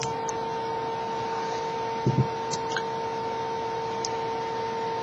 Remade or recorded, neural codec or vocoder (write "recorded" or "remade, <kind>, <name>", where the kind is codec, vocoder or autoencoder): recorded